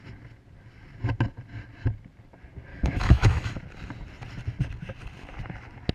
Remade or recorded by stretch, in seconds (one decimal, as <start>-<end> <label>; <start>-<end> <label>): 0.0-2.7 recorded; 2.7-3.5 remade; 3.5-5.9 recorded